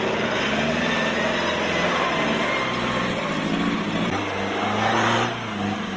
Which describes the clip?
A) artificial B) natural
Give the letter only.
B